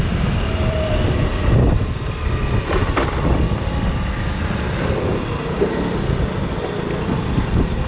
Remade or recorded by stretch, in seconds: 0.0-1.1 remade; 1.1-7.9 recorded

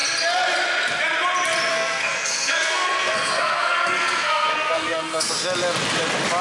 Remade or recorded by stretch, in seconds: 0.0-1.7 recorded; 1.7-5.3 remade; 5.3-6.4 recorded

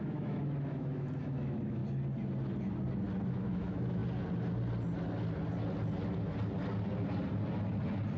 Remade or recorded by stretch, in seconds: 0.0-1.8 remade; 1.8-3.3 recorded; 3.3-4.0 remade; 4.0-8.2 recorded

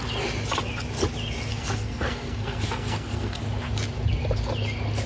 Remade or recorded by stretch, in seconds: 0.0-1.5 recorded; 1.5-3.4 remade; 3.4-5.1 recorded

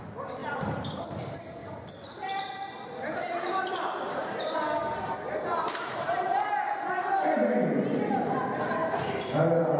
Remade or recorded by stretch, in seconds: 0.0-0.4 recorded; 0.4-1.0 remade; 1.0-1.6 recorded; 1.6-6.5 remade; 6.5-8.8 recorded; 8.8-9.8 remade